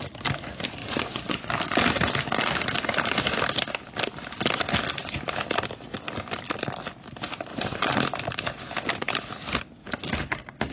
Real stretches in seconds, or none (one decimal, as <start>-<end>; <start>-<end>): 0.0-0.8; 1.5-7.5; 8.0-10.7